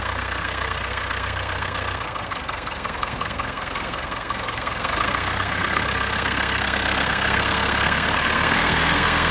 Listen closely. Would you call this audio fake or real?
fake